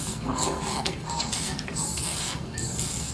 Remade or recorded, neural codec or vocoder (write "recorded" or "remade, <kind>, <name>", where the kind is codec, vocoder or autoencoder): remade, codec, SNAC